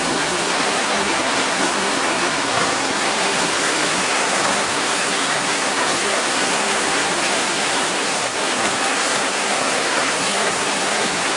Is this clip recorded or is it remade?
remade